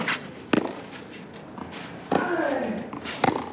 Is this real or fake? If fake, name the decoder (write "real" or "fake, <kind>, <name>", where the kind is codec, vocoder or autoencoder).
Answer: real